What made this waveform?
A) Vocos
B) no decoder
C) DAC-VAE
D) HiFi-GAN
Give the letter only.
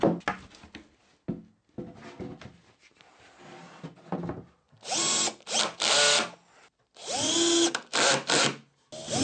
B